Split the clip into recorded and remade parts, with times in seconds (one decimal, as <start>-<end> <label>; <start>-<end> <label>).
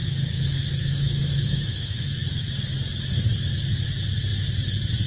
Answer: 0.0-2.5 remade; 2.5-5.1 recorded